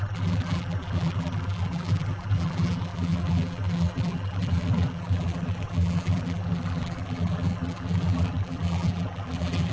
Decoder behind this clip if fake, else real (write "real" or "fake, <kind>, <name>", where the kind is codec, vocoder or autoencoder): fake, vocoder, BigVGAN v2